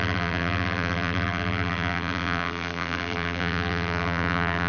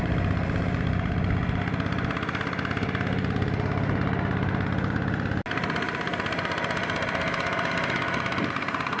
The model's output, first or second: first